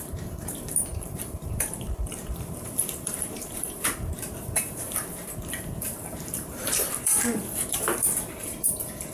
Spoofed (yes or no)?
yes